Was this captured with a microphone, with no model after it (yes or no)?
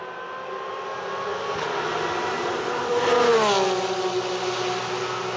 yes